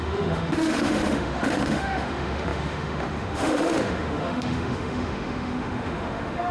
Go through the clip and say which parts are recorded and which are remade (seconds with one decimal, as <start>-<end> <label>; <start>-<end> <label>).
0.0-6.5 remade